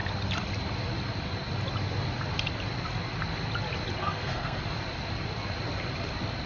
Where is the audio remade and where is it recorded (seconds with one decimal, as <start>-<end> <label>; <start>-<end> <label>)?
0.0-4.0 recorded; 4.0-4.6 remade; 4.6-6.5 recorded